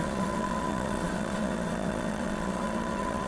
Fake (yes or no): yes